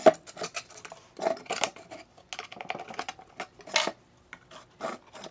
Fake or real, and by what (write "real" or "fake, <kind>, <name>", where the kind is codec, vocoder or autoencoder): real